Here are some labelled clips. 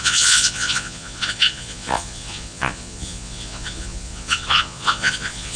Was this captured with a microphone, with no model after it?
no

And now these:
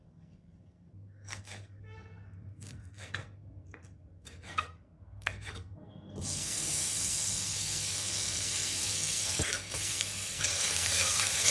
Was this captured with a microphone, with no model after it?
no